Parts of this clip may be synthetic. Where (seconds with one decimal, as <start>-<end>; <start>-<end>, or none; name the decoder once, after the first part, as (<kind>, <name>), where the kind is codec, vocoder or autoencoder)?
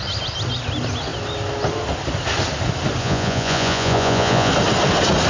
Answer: 3.0-4.5 (vocoder, Vocos)